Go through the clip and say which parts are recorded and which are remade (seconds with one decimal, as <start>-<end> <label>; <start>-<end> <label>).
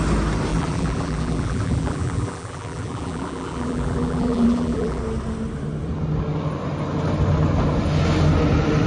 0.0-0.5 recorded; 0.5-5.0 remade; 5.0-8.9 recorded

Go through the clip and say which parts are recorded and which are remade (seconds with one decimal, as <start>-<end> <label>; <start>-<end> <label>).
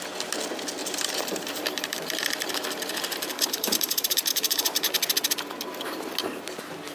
0.0-0.8 recorded; 0.8-4.9 remade; 4.9-6.9 recorded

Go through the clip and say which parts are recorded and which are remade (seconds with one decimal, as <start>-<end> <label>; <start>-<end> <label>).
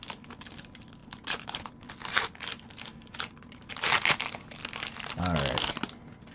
0.0-1.0 recorded; 1.0-1.7 remade; 1.7-2.9 recorded; 2.9-3.7 remade; 3.7-6.3 recorded